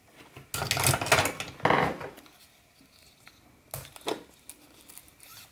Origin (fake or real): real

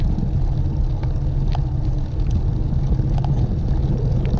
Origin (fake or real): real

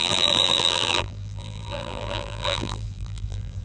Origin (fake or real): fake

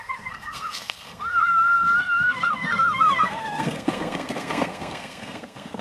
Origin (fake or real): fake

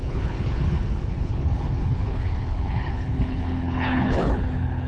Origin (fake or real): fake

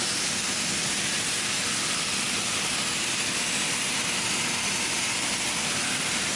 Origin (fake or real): real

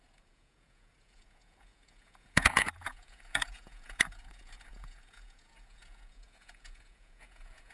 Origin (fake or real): fake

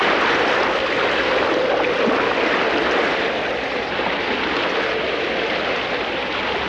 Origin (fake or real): real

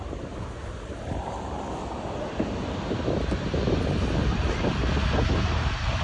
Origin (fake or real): real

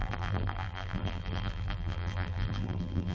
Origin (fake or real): fake